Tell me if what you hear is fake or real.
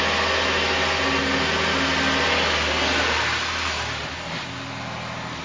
real